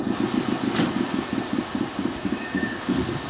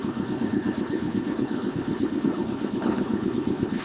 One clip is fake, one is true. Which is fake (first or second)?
second